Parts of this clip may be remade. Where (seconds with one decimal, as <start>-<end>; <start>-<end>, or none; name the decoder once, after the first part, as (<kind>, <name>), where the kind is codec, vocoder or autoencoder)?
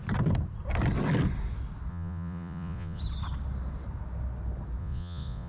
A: 1.9-3.0 (vocoder, Vocos); 4.8-5.5